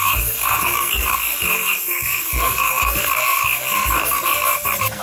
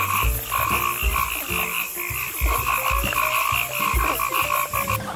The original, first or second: second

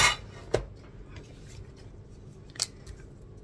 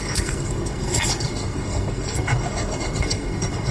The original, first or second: first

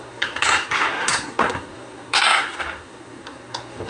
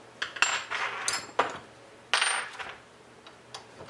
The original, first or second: second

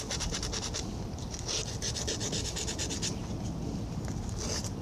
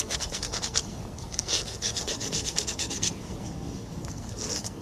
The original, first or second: first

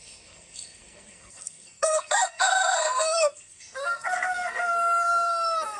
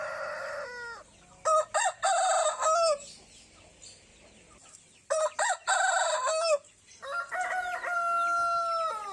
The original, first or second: second